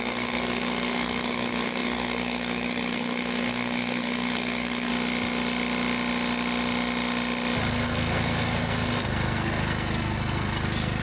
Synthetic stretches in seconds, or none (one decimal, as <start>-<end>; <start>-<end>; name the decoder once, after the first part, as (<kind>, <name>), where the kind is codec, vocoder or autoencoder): 0.0-4.9 (codec, SNAC); 7.7-11.0